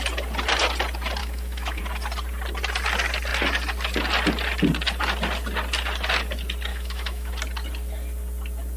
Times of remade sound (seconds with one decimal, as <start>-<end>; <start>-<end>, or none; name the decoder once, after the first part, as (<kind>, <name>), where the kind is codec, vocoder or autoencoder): 1.2-1.8 (autoencoder, DAC-VAE); 6.7-7.3